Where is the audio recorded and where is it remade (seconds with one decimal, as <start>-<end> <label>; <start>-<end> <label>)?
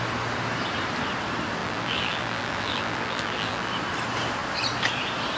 0.0-1.6 recorded; 1.6-3.7 remade; 3.7-5.4 recorded